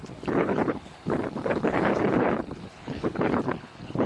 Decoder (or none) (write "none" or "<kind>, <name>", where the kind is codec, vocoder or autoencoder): codec, HILCodec